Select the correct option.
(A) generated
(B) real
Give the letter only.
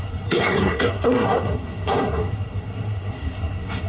A